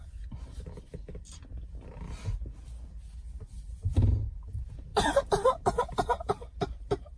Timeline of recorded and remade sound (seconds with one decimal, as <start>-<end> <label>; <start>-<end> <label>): 0.0-4.9 recorded; 4.9-7.2 remade